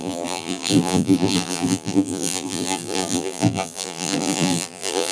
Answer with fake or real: fake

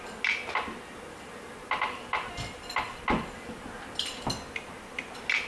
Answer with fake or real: real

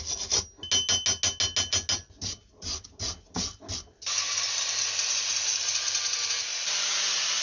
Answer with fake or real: real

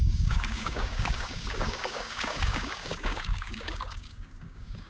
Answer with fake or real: fake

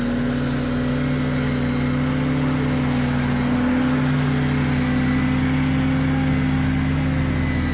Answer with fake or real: real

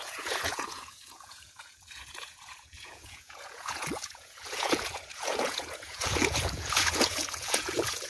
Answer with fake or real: fake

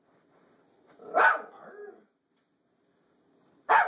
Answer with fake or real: real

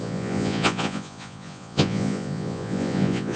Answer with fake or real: fake